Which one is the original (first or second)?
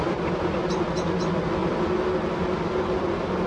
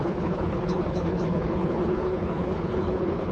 first